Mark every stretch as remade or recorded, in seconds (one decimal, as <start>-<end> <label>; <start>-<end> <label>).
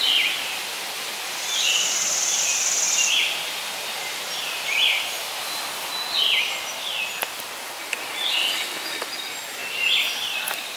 0.0-10.8 recorded